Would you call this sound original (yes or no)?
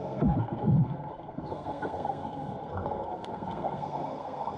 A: no